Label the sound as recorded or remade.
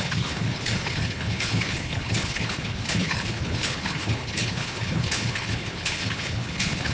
remade